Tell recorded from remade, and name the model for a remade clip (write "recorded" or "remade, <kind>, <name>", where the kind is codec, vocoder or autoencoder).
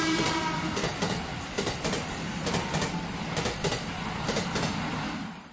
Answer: recorded